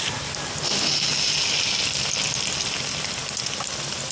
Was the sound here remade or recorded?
recorded